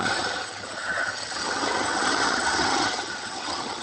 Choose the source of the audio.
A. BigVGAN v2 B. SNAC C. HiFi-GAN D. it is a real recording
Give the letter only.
C